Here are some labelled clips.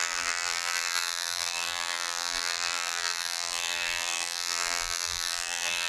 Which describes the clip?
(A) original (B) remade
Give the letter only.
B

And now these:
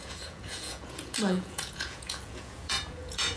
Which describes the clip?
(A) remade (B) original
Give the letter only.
A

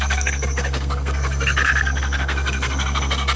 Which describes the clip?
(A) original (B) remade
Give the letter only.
B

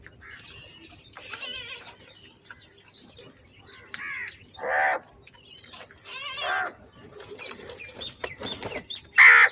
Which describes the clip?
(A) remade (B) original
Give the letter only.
B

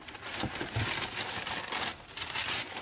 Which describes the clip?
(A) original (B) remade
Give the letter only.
A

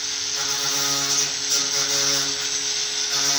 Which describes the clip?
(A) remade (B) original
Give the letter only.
B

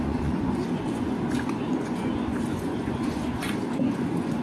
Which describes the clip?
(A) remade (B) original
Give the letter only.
A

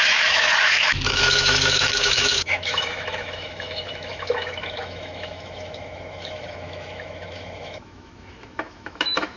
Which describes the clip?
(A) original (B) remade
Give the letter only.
B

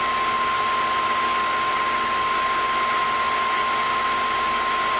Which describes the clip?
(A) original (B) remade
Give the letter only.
A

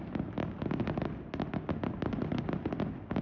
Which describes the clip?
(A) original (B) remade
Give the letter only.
A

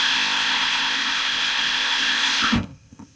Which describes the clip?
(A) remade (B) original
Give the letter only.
A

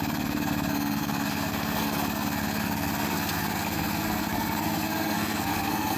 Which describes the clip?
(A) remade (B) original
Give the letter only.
A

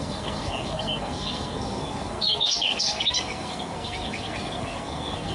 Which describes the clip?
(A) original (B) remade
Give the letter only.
B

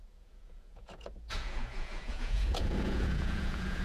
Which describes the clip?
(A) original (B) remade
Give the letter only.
B